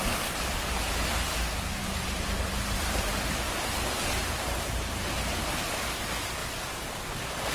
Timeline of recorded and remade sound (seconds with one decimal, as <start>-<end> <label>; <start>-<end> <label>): 0.0-1.8 recorded; 1.8-3.4 remade; 3.4-4.2 recorded; 4.2-5.4 remade; 5.4-7.5 recorded